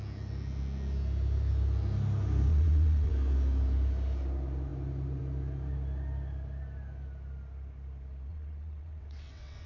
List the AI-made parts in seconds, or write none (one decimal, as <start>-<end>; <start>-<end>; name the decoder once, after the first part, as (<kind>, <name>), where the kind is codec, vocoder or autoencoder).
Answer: 2.5-3.1 (vocoder, WaveNeXt); 8.3-9.7